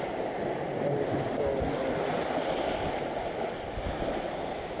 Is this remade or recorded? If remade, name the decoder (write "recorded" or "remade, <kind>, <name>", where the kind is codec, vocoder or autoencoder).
recorded